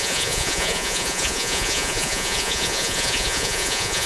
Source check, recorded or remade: remade